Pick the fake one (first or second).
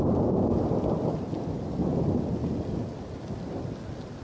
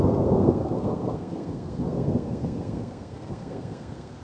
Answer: second